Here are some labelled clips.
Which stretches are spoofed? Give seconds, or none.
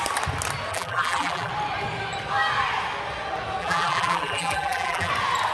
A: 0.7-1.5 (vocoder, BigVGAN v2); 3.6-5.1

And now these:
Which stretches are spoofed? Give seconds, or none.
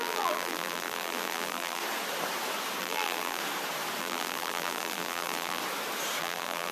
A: 0.0-1.8 (vocoder, BigVGAN v2); 2.8-3.4; 4.0-5.6; 6.2-6.7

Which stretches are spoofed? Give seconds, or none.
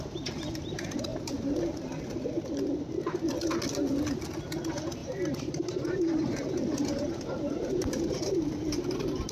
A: 5.0-8.4 (vocoder, BigVGAN v2)